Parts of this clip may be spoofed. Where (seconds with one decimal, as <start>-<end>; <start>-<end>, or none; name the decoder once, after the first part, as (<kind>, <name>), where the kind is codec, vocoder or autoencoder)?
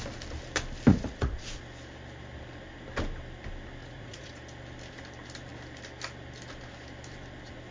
0.9-1.6 (vocoder, Vocos); 3.8-4.3